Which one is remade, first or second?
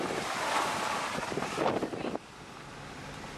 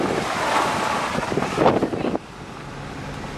first